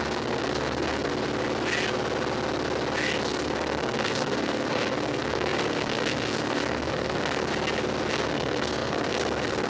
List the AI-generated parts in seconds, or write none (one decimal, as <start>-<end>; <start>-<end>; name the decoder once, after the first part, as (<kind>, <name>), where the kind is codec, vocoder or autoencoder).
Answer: 0.0-1.1 (codec, SNAC); 3.3-7.5; 8.1-9.7